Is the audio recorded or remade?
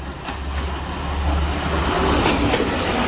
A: recorded